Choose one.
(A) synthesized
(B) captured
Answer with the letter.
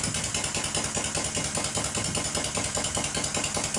B